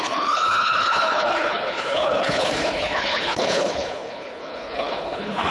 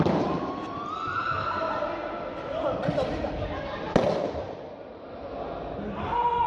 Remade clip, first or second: first